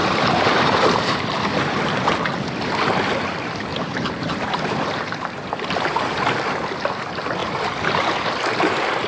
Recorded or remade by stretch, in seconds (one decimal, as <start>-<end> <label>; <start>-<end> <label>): 0.0-1.8 remade; 1.8-3.7 recorded; 3.7-6.2 remade; 6.2-7.4 recorded; 7.4-8.2 remade; 8.2-9.1 recorded